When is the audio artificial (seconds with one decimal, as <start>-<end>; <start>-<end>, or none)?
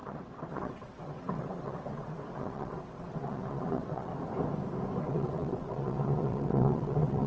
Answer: 0.0-4.1; 5.0-7.3